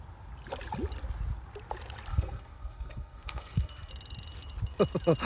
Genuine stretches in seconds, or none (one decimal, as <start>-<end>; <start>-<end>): 0.0-2.1; 3.9-5.3